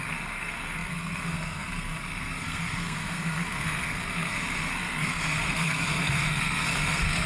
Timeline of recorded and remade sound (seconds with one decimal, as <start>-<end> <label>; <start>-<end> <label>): 0.0-7.3 remade